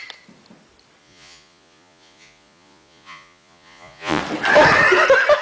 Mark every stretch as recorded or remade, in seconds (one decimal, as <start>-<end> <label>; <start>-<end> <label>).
0.0-1.0 recorded; 1.0-4.2 remade; 4.2-5.4 recorded